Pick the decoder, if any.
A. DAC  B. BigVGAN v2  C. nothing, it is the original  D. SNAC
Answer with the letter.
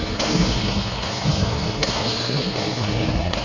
D